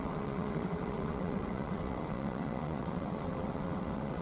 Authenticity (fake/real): fake